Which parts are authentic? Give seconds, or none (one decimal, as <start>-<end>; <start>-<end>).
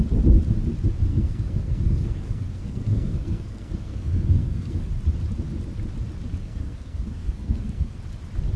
0.0-1.1; 4.9-6.4; 8.0-8.6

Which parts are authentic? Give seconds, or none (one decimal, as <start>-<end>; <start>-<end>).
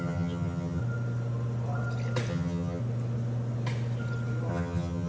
0.8-2.3; 2.8-4.5